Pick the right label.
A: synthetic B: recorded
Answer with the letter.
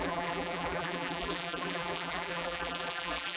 A